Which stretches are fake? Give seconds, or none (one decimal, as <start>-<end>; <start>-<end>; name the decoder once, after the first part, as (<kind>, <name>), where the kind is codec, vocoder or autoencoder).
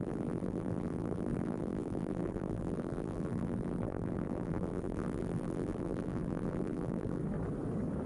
0.0-7.2 (vocoder, BigVGAN v2)